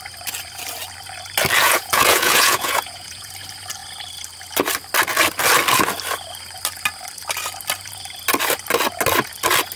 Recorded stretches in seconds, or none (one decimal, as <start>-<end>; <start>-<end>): 0.0-1.6; 3.3-9.8